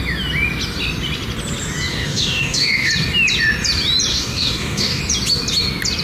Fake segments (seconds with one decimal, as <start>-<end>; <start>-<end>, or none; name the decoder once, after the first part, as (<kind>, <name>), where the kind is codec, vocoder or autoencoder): 1.9-2.9 (codec, DAC); 4.1-5.0